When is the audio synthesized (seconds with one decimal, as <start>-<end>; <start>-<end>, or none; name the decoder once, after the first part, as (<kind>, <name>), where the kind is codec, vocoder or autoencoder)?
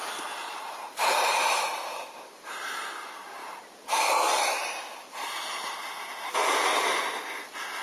0.4-2.6 (vocoder, BigVGAN v2)